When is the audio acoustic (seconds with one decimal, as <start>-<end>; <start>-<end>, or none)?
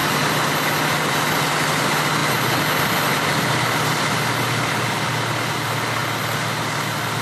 0.0-7.2